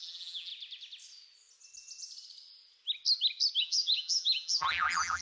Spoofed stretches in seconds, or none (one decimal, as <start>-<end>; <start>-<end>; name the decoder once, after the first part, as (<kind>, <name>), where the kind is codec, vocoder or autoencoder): 0.0-0.5 (vocoder, BigVGAN v2); 3.6-5.2